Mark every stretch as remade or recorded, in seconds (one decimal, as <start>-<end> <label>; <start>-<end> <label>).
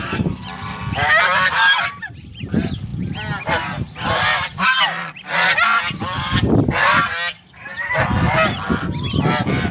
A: 0.0-9.7 recorded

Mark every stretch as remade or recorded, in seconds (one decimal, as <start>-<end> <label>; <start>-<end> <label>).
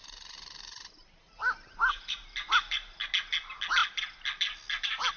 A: 0.0-3.1 remade; 3.1-5.2 recorded